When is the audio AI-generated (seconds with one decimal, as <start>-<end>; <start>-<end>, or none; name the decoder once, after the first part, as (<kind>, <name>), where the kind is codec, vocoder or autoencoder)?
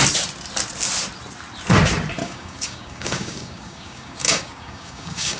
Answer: 2.2-5.4 (codec, DAC)